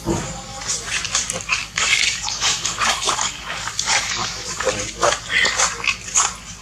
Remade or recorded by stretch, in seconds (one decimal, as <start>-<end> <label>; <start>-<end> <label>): 0.0-1.6 recorded; 1.6-4.7 remade; 4.7-6.6 recorded